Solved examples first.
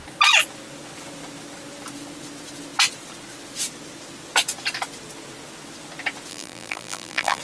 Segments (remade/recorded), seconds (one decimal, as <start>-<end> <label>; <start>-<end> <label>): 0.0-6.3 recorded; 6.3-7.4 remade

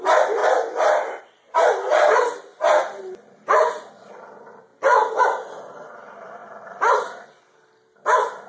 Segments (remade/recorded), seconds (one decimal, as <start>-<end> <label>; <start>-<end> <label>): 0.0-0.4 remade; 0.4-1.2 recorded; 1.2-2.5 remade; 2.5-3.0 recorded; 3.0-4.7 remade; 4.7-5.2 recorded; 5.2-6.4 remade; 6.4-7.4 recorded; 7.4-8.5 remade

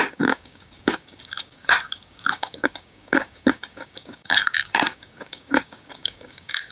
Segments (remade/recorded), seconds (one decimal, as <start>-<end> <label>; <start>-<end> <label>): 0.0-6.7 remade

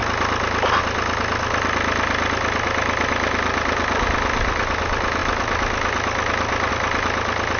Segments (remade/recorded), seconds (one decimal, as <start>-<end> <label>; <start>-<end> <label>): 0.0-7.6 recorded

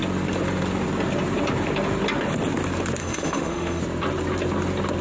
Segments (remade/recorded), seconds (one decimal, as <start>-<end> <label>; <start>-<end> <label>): 0.0-3.0 recorded; 3.0-3.8 remade; 3.8-5.0 recorded

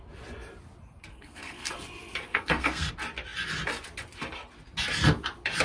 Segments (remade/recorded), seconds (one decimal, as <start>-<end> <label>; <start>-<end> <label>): 0.0-1.1 recorded; 1.1-1.7 remade; 1.7-2.3 recorded; 2.3-2.9 remade; 2.9-5.6 recorded

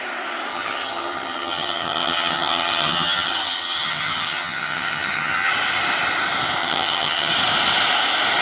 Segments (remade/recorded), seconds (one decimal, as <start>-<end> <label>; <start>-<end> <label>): 0.0-0.5 recorded; 0.5-5.5 remade; 5.5-6.6 recorded; 6.6-7.3 remade; 7.3-8.4 recorded

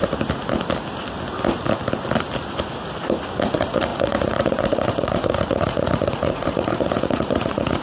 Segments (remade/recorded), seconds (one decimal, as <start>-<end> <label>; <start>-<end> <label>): 0.0-3.5 recorded; 3.5-7.8 remade